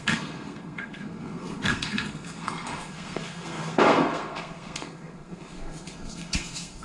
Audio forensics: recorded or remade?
remade